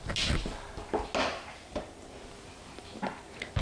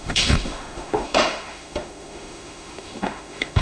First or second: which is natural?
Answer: first